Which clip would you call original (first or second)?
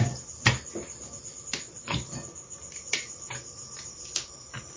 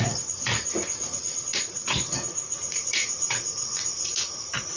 first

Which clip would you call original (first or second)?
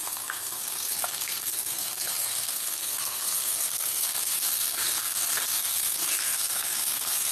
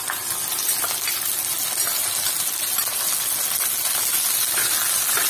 second